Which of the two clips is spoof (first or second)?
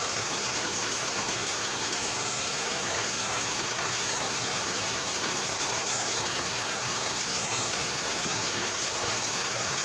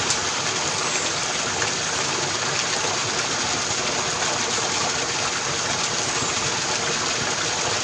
first